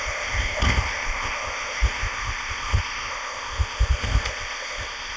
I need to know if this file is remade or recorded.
remade